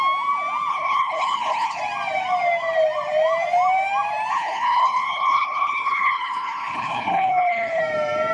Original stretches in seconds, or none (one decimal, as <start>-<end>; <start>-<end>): 0.0-0.7; 1.8-4.3; 7.8-8.3